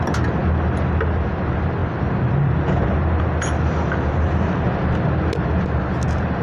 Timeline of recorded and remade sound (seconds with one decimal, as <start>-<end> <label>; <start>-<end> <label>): 0.0-6.4 recorded